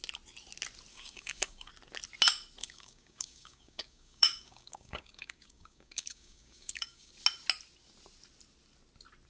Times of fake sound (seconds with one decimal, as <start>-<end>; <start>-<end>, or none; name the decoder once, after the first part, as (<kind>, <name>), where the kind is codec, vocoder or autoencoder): 0.9-1.7 (codec, DAC); 2.6-7.1